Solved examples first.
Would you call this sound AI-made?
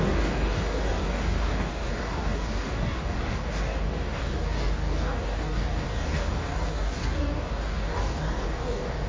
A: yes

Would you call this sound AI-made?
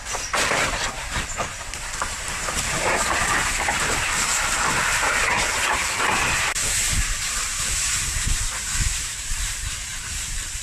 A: yes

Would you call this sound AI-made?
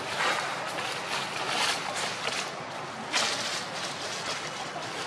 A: no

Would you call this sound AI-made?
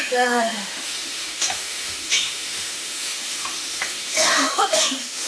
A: yes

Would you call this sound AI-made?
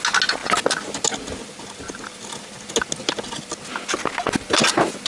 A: no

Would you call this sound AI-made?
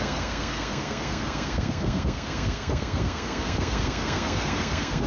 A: yes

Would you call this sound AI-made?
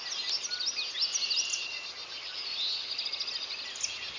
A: no